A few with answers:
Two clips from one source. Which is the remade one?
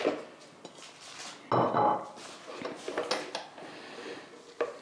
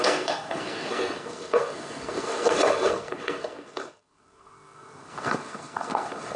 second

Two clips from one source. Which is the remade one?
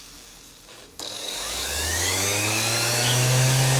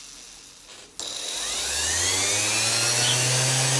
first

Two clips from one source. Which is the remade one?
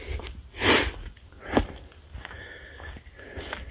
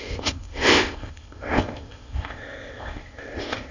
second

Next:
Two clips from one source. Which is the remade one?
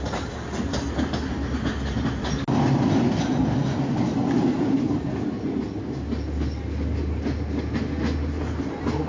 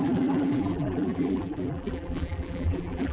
second